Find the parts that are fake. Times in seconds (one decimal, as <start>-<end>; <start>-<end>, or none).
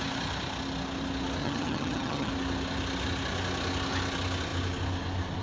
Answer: 1.4-2.3